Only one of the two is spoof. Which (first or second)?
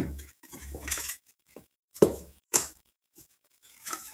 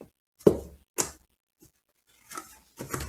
first